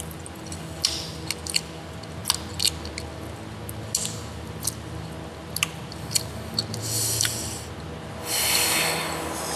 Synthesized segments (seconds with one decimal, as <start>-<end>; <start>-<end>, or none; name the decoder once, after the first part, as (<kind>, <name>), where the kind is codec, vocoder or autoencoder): none